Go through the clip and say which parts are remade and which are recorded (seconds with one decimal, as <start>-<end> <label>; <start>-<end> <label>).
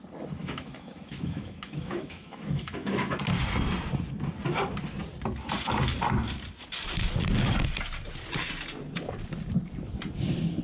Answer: 0.0-0.4 recorded; 0.4-3.2 remade; 3.2-10.6 recorded